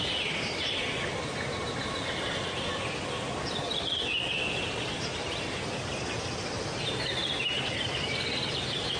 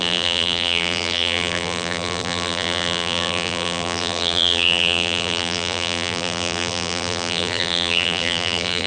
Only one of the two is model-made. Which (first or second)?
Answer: second